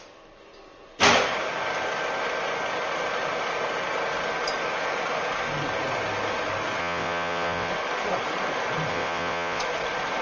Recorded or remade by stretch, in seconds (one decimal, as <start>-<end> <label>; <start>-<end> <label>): 0.0-6.8 recorded; 6.8-7.7 remade; 7.7-8.9 recorded; 8.9-9.6 remade; 9.6-10.2 recorded